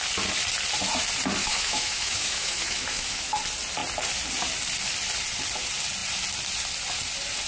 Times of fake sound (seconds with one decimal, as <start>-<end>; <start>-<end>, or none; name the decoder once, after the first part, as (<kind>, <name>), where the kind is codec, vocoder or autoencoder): 1.4-3.4 (autoencoder, DAC-VAE)